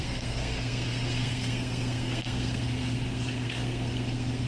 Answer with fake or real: fake